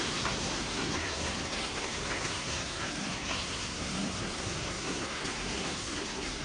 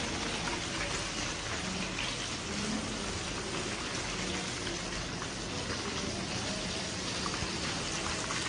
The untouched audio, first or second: second